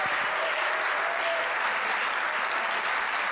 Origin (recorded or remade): recorded